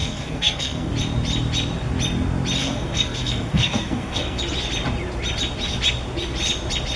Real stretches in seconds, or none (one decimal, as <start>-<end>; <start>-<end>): 0.9-2.6; 4.4-7.0